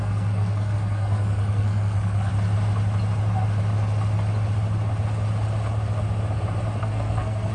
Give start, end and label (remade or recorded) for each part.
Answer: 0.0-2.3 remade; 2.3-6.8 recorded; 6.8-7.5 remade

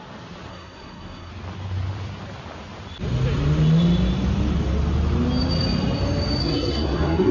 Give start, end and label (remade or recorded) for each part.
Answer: 0.0-0.5 recorded; 0.5-1.3 remade; 1.3-6.4 recorded; 6.4-7.3 remade

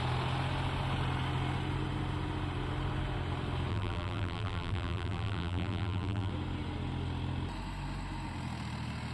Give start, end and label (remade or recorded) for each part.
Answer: 0.0-3.7 recorded; 3.7-6.3 remade; 6.3-9.1 recorded

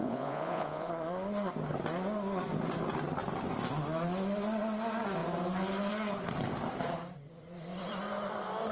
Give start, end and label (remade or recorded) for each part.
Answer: 0.0-0.9 remade; 0.9-8.7 recorded

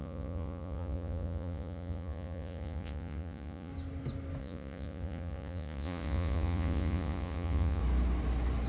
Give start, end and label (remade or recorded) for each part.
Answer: 0.0-3.7 remade; 3.7-4.4 recorded; 4.4-7.8 remade; 7.8-8.7 recorded

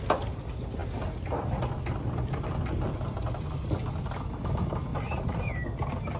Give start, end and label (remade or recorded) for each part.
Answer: 0.0-4.9 recorded; 4.9-5.5 remade; 5.5-6.2 recorded

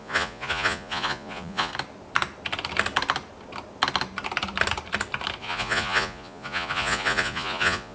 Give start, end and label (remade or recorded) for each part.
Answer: 0.0-1.7 remade; 1.7-5.4 recorded; 5.4-7.9 remade